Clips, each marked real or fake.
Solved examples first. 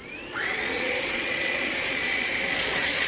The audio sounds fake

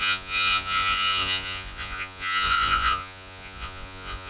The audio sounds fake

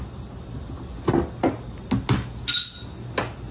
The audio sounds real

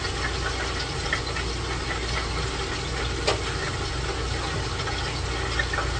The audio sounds real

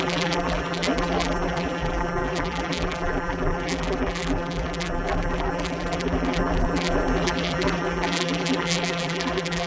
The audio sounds fake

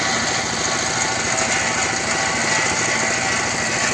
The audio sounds real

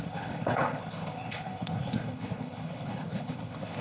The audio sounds fake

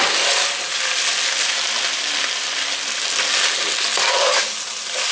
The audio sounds real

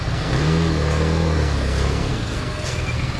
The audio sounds fake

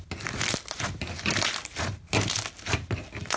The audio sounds real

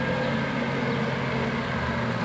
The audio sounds real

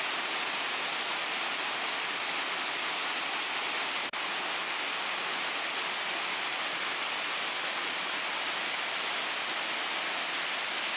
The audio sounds real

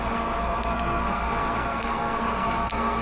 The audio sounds fake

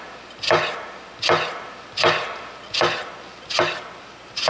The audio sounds real